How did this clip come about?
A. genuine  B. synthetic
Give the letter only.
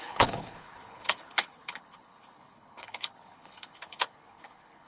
B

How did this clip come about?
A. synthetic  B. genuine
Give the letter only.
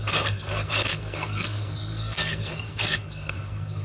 A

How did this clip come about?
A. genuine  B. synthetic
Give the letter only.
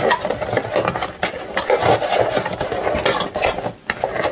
A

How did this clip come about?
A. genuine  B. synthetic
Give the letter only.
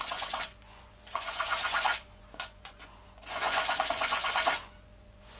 B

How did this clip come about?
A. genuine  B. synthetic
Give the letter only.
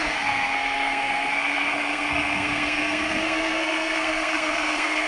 B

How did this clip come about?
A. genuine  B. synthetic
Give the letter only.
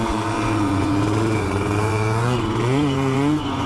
B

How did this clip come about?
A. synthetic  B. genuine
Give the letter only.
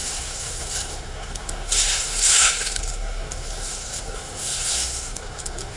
A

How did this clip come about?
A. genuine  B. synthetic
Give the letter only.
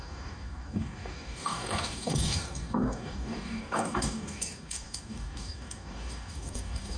B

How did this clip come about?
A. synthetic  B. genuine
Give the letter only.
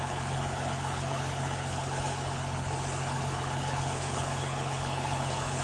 A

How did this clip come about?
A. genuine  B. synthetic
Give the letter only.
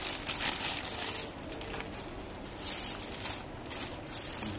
A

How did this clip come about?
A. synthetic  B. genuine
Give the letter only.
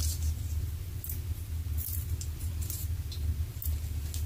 B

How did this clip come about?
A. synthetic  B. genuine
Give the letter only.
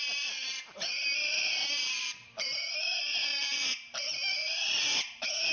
A